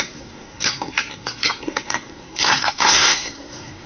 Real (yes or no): no